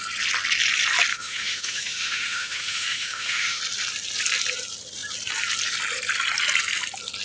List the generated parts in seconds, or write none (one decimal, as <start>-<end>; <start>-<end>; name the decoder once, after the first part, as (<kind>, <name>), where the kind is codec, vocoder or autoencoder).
1.1-3.6 (autoencoder, DAC-VAE)